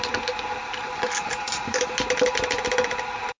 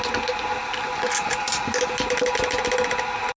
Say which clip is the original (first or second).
second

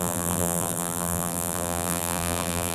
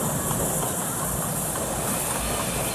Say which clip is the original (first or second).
second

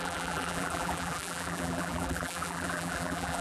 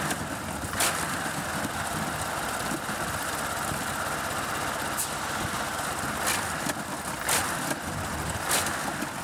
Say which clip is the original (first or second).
second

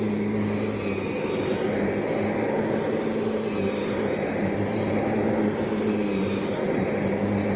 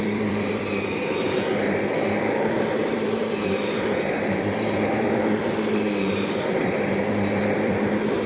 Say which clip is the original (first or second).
first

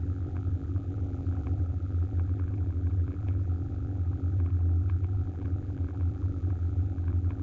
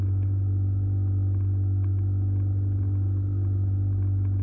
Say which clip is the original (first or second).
second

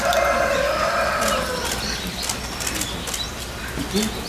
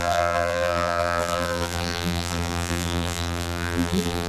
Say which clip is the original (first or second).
first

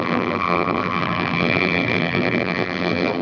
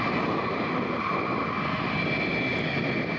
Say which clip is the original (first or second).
second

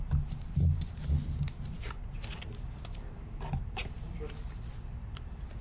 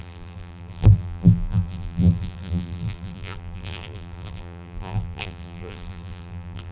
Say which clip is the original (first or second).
first